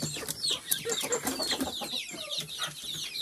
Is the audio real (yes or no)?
yes